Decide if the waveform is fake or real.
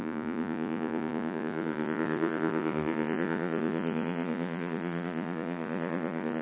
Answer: fake